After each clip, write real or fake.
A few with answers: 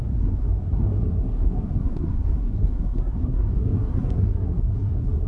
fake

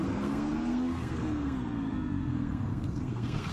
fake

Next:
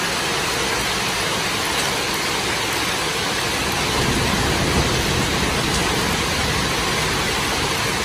real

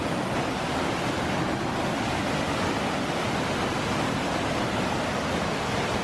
real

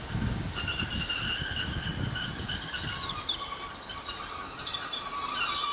real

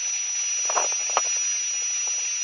real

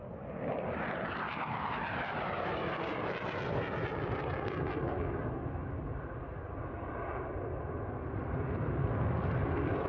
real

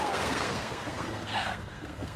fake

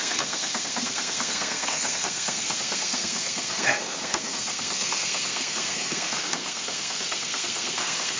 fake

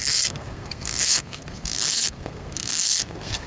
fake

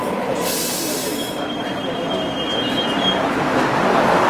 real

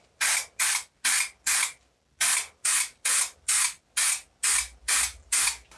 real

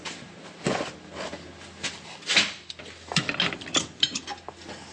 real